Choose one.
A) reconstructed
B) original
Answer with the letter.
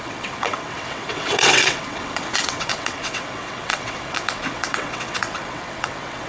A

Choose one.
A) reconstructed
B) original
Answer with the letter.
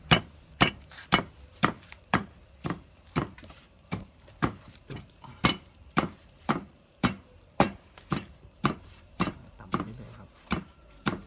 A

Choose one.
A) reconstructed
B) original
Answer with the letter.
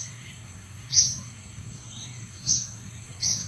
A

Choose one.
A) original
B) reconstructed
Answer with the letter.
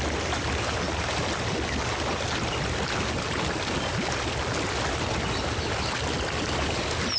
A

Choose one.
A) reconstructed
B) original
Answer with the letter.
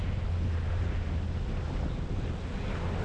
B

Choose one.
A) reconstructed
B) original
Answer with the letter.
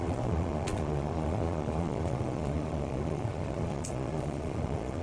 A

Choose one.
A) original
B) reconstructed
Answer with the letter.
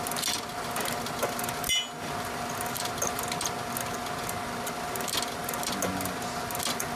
A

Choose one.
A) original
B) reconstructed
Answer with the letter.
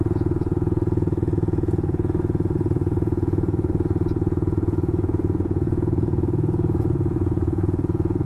B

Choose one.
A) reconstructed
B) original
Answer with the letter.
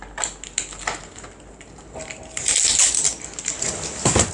B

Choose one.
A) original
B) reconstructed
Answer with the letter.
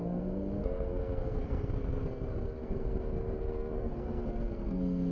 B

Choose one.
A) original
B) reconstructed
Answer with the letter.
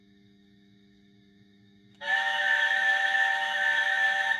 B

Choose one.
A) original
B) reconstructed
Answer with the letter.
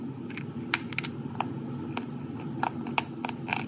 A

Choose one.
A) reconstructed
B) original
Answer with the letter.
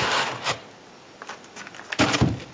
B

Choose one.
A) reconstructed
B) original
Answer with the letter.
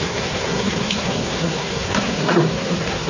A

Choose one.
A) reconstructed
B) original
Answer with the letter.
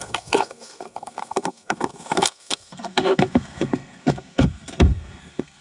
A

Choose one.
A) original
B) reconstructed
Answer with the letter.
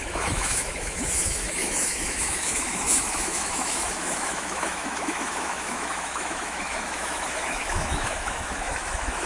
B